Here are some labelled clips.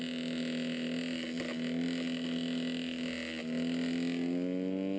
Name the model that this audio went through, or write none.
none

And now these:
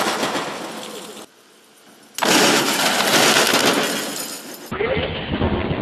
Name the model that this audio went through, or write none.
none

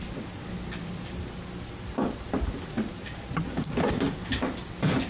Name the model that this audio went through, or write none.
none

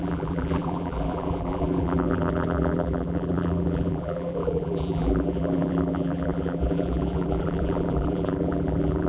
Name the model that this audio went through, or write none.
vocoder, BigVGAN v2